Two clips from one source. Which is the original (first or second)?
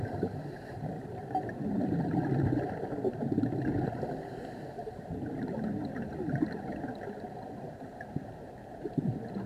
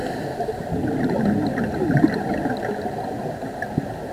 second